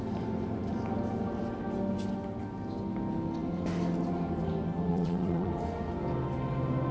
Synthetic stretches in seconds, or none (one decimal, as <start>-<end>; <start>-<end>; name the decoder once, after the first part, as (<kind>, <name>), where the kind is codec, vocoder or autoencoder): 4.9-5.5 (vocoder, Vocos)